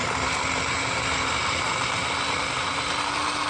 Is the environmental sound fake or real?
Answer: real